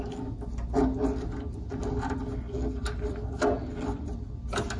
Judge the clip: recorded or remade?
recorded